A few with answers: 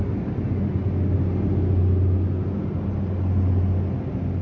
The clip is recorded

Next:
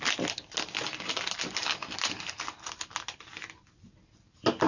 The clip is recorded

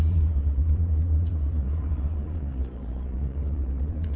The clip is remade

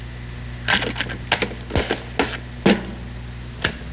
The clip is recorded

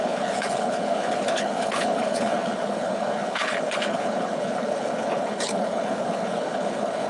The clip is remade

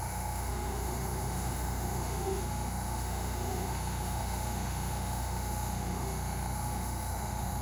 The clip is remade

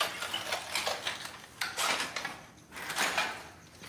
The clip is recorded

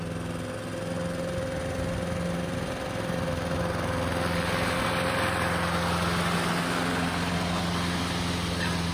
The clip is recorded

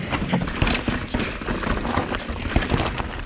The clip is recorded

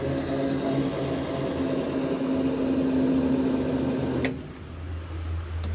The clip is recorded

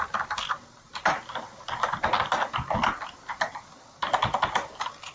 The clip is recorded